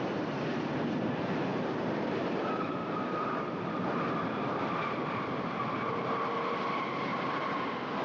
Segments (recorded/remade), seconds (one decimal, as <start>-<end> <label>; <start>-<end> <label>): 0.0-1.5 recorded; 1.5-6.2 remade; 6.2-7.1 recorded; 7.1-7.6 remade; 7.6-8.0 recorded